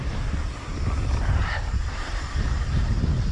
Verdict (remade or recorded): recorded